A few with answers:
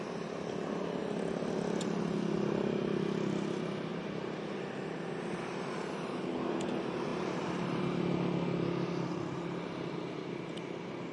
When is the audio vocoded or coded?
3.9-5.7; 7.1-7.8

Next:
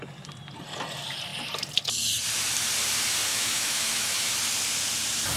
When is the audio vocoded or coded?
3.3-4.4

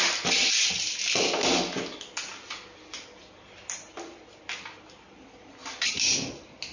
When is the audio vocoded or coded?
5.6-6.3

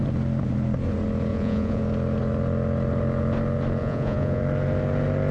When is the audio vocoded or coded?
1.3-1.8; 3.8-4.4

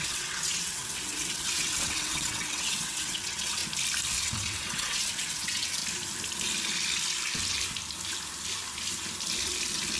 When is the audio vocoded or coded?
0.0-3.6; 4.2-5.8

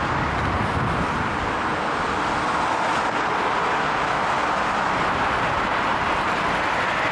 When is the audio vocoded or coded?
none

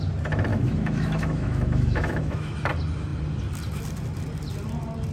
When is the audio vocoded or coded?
0.5-2.7